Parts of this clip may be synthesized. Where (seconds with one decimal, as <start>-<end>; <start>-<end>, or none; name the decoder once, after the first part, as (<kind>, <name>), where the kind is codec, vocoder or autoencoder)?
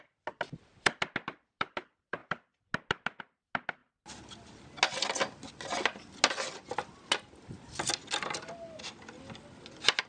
none